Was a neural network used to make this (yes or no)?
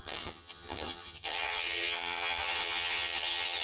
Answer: yes